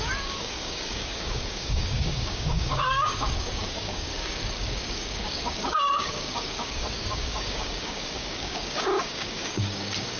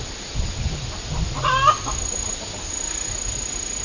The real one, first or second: second